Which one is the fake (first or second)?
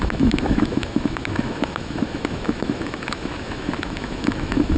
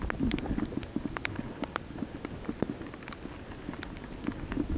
first